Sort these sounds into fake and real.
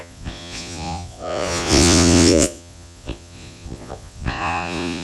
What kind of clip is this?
fake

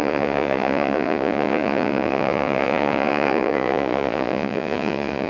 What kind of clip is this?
fake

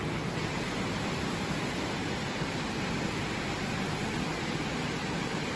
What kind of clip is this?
real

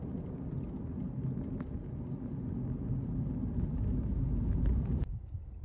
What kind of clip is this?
real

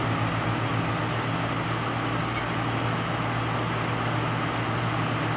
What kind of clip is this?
real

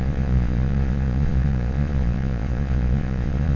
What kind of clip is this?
fake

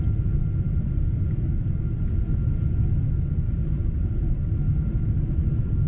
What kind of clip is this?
real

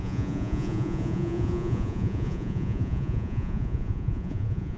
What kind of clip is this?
fake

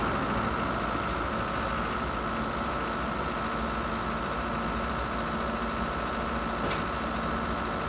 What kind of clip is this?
real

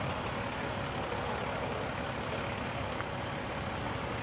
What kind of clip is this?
real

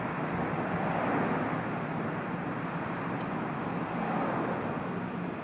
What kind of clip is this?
real